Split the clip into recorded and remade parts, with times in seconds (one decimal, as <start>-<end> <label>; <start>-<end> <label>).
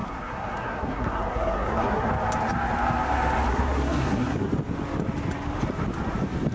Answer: 0.0-2.1 remade; 2.1-3.5 recorded; 3.5-4.5 remade; 4.5-6.5 recorded